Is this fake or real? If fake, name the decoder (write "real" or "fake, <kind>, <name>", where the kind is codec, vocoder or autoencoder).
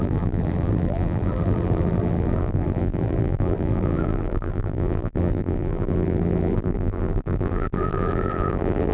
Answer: fake, vocoder, BigVGAN v2